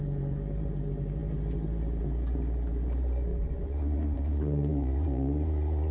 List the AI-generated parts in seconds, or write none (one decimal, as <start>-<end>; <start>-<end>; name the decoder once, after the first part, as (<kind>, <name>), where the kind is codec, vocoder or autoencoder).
3.3-5.9 (vocoder, Vocos)